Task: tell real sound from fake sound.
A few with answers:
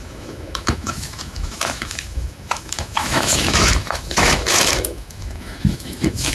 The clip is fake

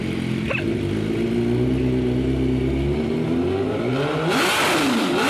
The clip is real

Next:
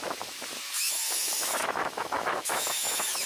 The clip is fake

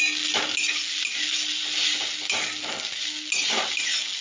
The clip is real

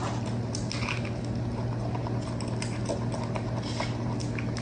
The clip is real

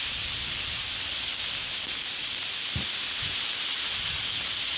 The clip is real